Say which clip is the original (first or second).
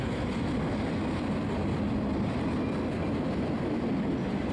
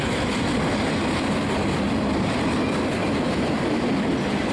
first